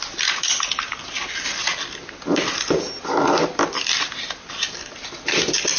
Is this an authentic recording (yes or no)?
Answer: yes